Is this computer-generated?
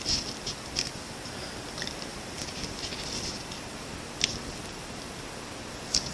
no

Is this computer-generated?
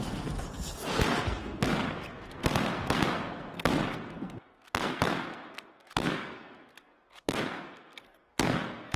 yes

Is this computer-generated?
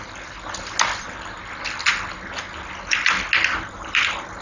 no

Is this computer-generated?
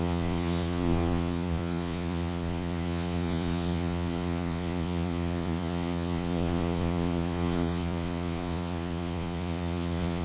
yes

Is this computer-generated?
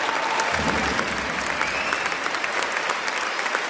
no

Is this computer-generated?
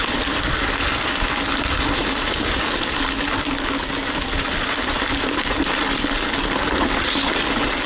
no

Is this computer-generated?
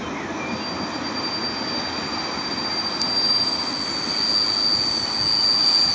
no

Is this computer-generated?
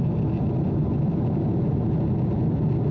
no